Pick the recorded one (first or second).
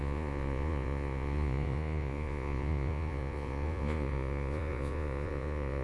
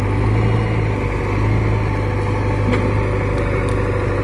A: second